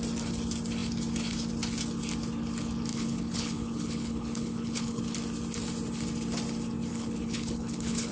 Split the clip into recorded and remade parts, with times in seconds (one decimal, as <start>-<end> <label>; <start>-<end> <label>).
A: 0.0-2.9 recorded; 2.9-5.0 remade; 5.0-6.9 recorded; 6.9-8.1 remade